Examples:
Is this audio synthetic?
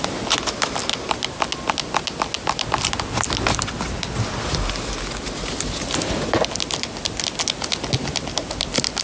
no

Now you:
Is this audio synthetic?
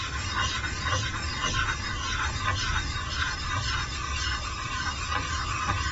no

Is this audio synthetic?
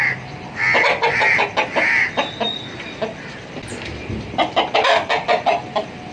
no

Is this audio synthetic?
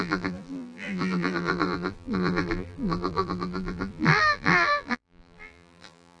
yes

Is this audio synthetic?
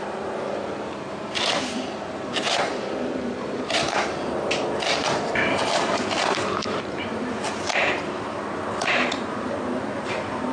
yes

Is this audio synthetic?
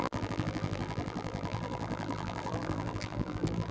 yes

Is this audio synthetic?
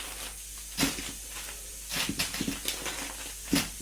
no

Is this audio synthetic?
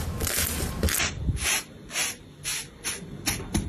no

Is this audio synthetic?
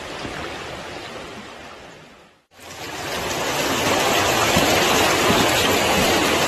yes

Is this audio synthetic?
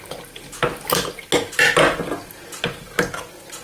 no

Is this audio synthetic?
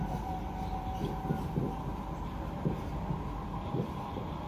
yes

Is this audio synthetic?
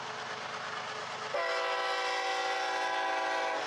no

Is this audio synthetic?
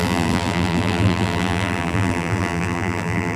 yes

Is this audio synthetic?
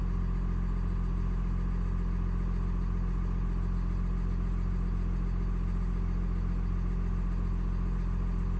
no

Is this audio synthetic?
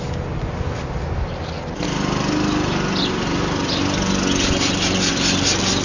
no